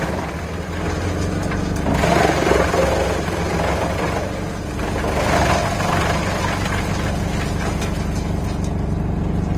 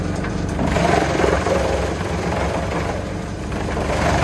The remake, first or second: second